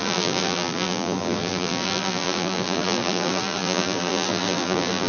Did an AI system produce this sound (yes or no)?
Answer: yes